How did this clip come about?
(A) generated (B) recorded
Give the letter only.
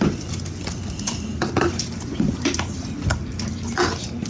B